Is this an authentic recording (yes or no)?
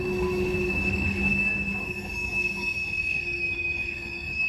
no